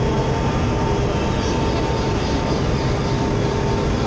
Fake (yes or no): no